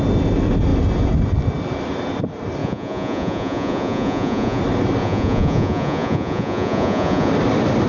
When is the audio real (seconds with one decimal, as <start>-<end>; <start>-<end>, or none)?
0.0-2.6; 4.6-5.0; 7.3-7.9